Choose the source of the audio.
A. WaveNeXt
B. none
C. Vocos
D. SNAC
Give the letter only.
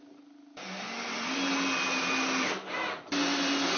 B